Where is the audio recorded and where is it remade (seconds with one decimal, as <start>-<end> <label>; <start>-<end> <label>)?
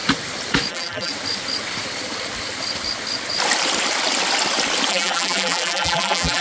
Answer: 0.0-0.7 recorded; 0.7-1.1 remade; 1.1-4.9 recorded; 4.9-6.4 remade